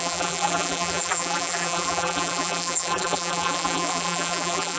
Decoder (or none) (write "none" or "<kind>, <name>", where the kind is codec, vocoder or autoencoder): vocoder, BigVGAN v2